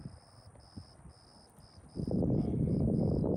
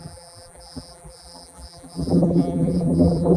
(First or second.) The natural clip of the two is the first